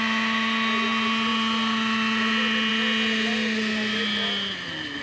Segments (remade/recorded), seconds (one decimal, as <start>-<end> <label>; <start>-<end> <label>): 0.0-5.0 recorded